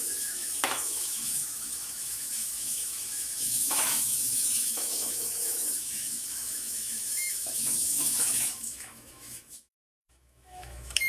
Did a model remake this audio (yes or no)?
yes